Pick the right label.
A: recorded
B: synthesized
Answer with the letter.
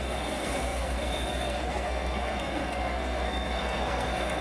B